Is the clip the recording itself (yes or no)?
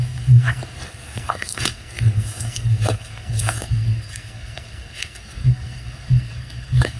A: no